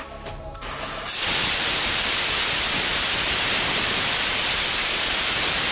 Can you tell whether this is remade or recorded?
recorded